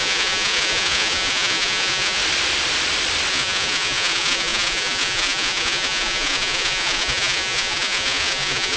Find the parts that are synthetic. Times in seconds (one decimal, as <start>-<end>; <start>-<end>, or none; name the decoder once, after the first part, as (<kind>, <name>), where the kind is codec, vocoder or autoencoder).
0.0-2.2 (vocoder, Vocos); 3.3-8.8